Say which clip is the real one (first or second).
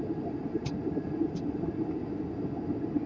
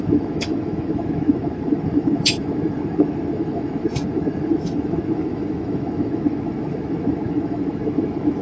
first